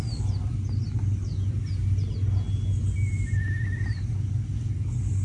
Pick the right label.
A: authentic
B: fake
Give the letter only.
A